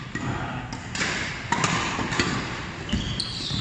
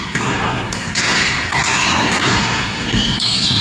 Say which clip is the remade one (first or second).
second